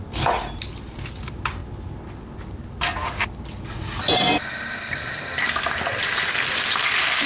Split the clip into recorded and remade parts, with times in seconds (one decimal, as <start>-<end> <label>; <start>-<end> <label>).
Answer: 0.0-7.3 recorded

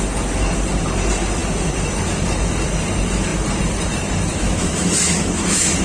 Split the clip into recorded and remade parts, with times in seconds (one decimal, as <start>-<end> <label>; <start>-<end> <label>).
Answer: 0.0-4.3 recorded; 4.3-5.8 remade

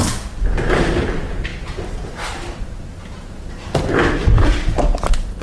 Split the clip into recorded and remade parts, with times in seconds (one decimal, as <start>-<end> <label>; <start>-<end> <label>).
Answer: 0.0-5.4 recorded